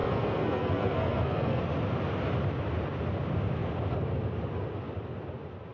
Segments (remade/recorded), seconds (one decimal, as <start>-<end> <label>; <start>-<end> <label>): 0.0-1.6 remade; 1.6-5.7 recorded